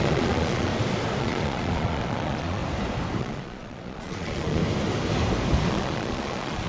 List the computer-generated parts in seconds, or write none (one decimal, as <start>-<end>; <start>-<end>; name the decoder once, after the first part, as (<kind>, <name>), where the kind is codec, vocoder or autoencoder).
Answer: 0.0-0.7 (vocoder, Vocos); 1.2-2.6; 3.2-4.6; 5.7-6.7